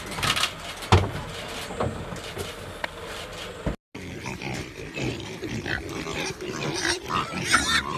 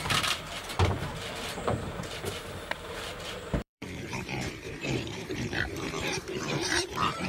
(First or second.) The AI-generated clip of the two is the second